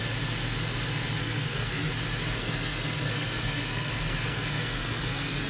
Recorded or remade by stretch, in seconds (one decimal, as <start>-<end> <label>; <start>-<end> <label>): 0.0-1.2 recorded; 1.2-1.9 remade; 1.9-2.4 recorded; 2.4-5.5 remade